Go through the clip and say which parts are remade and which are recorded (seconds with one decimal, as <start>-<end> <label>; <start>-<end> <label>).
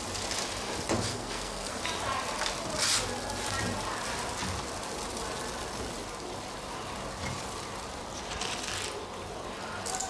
0.0-1.1 recorded; 1.1-1.8 remade; 1.8-10.1 recorded